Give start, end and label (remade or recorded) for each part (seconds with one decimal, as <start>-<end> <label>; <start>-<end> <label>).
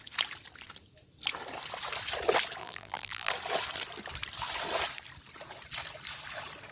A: 0.0-2.6 recorded; 2.6-3.3 remade; 3.3-6.7 recorded